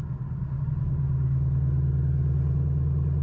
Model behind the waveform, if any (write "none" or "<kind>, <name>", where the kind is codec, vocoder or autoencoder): none